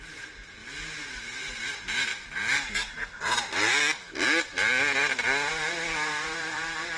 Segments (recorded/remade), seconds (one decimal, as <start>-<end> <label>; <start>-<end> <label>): 0.0-0.6 remade; 0.6-1.2 recorded; 1.2-2.1 remade; 2.1-5.5 recorded; 5.5-7.0 remade